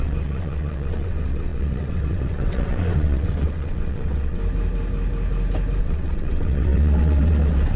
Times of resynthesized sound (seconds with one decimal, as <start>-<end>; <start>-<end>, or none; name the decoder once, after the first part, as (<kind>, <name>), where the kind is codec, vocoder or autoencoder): 0.0-4.4 (vocoder, WaveNeXt); 5.8-7.8